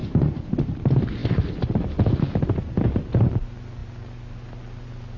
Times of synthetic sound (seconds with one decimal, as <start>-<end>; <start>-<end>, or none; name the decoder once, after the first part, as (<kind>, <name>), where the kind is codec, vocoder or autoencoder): 0.0-0.5 (vocoder, Vocos)

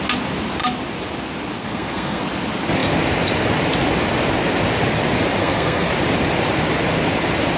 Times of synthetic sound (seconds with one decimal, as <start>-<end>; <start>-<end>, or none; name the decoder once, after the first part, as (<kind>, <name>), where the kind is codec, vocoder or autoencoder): 1.6-2.2 (codec, SNAC); 5.4-5.9

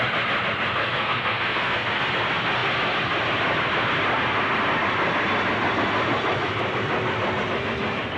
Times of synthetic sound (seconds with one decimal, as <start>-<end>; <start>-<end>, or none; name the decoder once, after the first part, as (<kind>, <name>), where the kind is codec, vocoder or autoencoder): 0.8-2.0 (codec, SNAC)

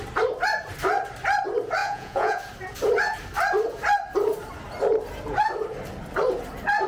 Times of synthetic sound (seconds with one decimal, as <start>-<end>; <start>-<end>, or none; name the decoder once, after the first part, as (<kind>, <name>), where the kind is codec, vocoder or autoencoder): 1.8-2.4 (vocoder, Vocos)

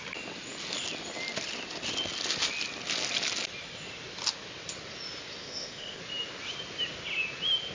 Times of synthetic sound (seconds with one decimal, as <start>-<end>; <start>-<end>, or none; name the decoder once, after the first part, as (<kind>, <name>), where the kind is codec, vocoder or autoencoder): 5.4-6.0 (codec, ZipCodec)

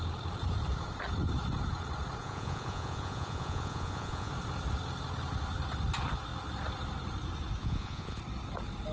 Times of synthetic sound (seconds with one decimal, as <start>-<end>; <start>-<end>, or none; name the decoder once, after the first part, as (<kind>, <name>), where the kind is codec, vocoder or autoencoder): 2.2-4.3 (vocoder, Vocos); 7.6-8.2